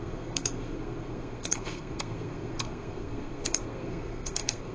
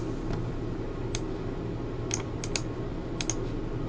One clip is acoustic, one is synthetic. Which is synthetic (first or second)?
first